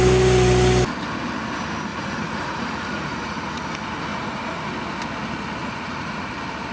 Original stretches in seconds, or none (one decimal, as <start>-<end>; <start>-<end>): 0.0-1.9; 3.6-4.1; 4.7-5.6; 6.3-6.7